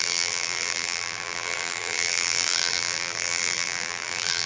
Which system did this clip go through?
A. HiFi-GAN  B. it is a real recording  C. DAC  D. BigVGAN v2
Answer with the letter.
D